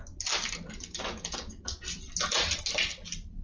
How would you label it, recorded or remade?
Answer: recorded